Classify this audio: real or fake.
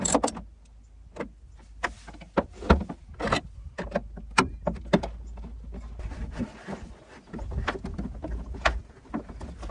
real